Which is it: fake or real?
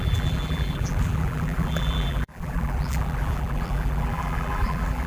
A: fake